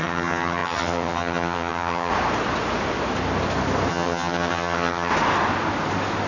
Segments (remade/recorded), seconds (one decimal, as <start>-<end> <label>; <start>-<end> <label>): 0.0-2.1 remade; 2.1-3.9 recorded; 3.9-5.1 remade; 5.1-6.3 recorded